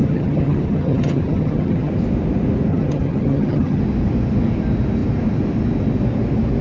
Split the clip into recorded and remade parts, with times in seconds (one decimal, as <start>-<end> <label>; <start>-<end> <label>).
0.0-1.9 remade; 1.9-2.7 recorded; 2.7-3.8 remade; 3.8-6.6 recorded